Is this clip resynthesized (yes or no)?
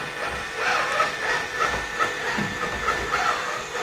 no